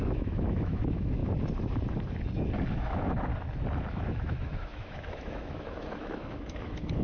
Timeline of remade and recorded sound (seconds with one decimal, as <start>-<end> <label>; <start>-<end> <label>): 0.0-1.2 remade; 1.2-2.7 recorded; 2.7-3.3 remade; 3.3-3.9 recorded; 3.9-7.0 remade